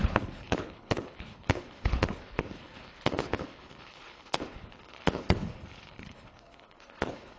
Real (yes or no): no